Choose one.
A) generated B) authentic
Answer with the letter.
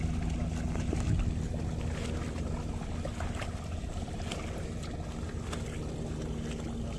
B